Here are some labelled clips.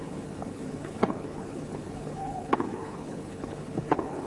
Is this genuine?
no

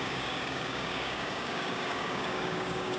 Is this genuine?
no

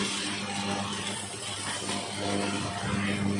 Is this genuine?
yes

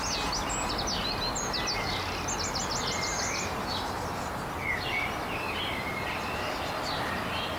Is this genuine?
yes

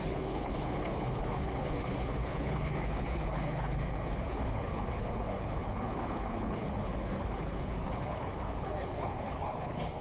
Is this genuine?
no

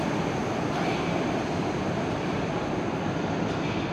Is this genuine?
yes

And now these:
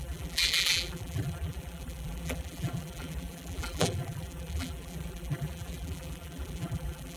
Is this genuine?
no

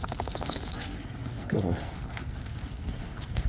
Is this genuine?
no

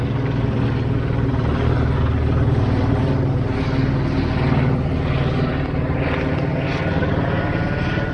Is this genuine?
yes